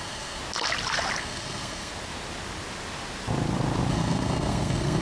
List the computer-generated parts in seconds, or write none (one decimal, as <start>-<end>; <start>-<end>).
0.0-0.4; 1.2-1.9; 3.9-5.0